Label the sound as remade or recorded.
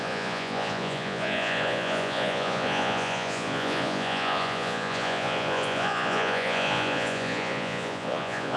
remade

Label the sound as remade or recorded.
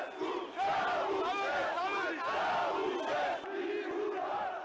recorded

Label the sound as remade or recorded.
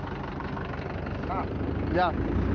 recorded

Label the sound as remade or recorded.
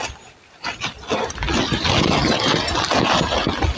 recorded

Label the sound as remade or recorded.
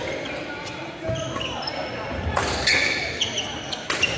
recorded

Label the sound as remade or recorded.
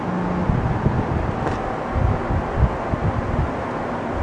recorded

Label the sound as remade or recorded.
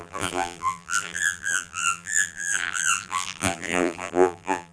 remade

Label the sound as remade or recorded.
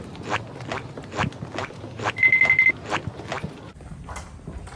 recorded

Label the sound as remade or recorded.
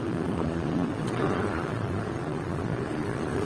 remade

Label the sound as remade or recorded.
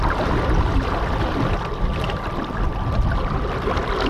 remade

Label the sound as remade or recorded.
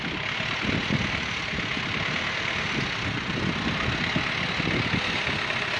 recorded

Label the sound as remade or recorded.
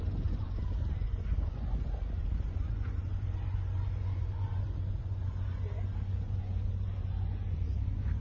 remade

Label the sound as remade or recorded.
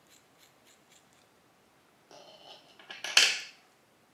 recorded